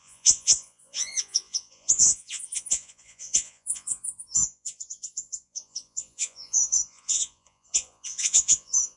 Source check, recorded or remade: remade